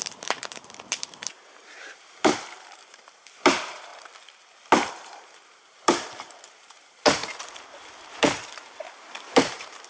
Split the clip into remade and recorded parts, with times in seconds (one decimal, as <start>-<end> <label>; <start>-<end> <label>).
0.0-3.9 remade; 3.9-4.9 recorded; 4.9-7.2 remade; 7.2-8.1 recorded; 8.1-9.9 remade